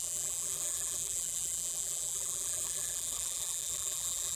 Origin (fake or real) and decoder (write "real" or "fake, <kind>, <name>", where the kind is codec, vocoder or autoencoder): fake, vocoder, BigVGAN v2